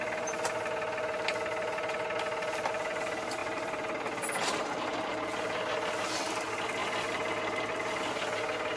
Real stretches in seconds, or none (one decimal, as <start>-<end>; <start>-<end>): 0.0-3.4; 5.1-6.8; 8.0-8.8